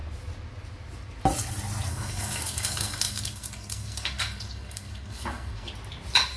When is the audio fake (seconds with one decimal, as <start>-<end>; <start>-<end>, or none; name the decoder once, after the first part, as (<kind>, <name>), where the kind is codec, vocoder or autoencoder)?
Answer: 1.9-5.7 (codec, SNAC)